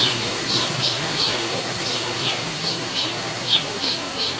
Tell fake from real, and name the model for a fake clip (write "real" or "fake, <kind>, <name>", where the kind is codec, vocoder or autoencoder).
fake, codec, SNAC